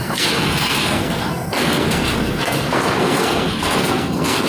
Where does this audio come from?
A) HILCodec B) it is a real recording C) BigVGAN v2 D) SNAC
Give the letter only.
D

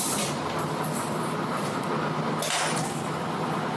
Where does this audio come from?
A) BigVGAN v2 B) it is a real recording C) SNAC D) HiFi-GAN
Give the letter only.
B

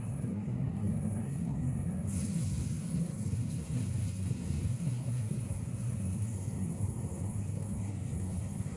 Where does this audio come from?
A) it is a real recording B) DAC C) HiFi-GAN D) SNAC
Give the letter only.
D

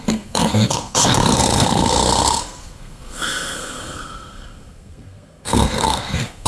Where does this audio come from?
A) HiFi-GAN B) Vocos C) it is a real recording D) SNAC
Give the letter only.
D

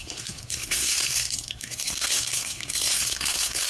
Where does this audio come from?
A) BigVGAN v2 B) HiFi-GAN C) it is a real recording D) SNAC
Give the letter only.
D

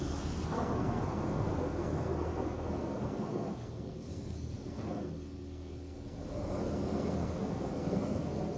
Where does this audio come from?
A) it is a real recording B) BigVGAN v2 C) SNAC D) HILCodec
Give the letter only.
C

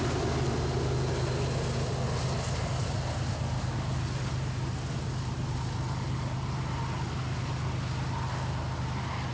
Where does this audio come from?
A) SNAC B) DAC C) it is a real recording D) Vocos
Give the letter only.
C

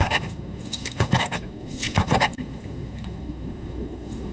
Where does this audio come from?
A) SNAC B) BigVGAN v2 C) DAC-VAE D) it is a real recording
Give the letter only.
A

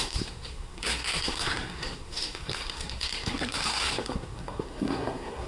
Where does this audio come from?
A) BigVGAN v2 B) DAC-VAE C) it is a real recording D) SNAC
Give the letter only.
D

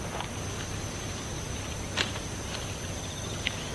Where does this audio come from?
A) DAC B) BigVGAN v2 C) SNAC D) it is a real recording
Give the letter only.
D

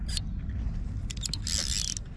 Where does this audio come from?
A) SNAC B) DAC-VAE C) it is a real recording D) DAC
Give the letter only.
C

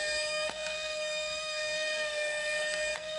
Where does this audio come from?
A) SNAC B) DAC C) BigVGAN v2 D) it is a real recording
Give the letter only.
A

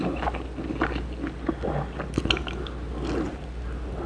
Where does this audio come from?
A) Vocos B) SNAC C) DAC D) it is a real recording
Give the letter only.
D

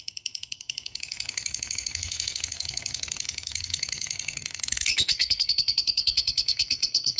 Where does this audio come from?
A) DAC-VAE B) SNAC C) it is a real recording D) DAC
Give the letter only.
B